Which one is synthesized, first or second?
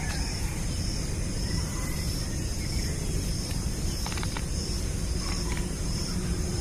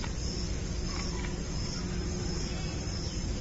first